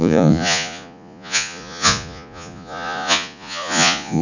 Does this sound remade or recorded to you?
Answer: remade